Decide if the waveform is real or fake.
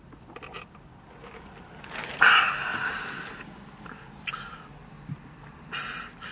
real